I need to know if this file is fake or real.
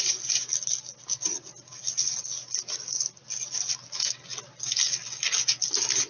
real